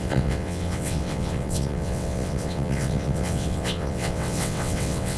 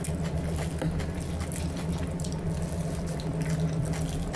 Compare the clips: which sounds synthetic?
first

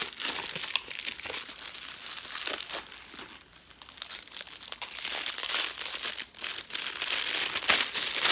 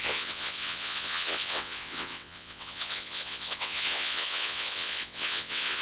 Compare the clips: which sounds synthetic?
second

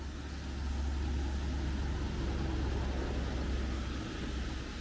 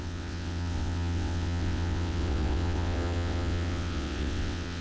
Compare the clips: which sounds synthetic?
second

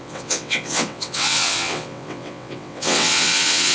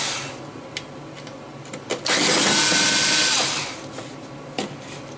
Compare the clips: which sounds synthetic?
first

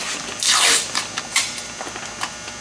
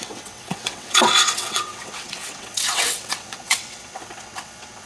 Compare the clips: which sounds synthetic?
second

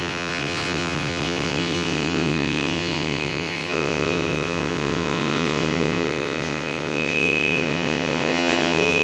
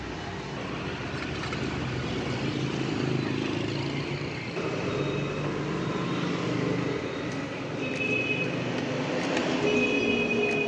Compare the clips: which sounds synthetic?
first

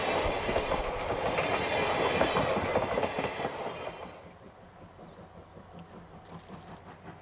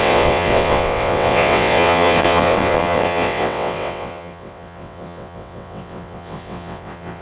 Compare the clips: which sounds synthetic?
second